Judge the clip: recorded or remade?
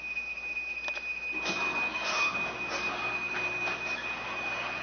recorded